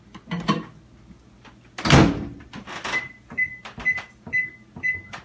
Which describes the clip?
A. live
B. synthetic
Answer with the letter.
A